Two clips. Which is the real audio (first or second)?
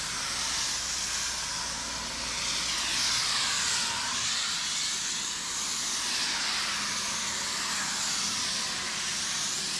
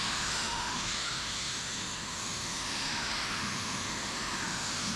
first